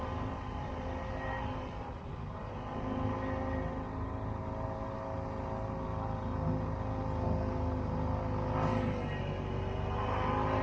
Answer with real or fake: real